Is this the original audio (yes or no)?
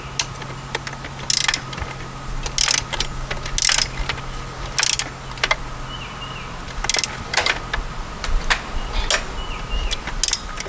yes